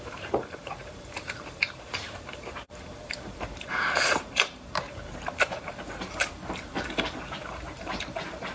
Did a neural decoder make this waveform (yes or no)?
yes